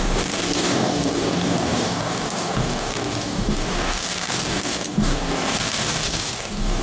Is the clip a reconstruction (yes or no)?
yes